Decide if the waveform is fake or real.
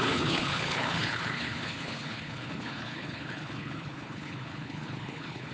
fake